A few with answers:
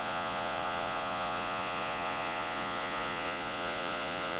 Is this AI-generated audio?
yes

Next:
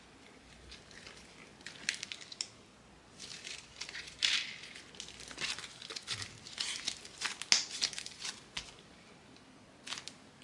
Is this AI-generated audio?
no